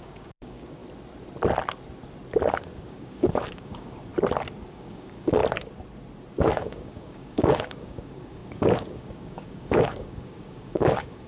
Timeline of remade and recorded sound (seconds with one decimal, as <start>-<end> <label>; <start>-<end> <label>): 0.0-0.8 remade; 0.8-2.6 recorded; 2.6-4.1 remade; 4.1-4.7 recorded; 4.7-5.4 remade; 5.4-6.4 recorded; 6.4-11.3 remade